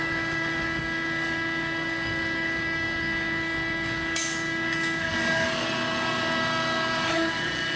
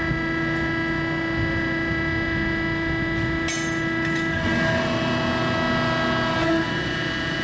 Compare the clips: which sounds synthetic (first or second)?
first